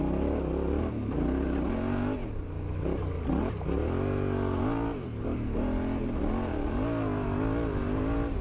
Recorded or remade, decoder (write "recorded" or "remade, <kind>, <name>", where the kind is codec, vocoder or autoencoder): recorded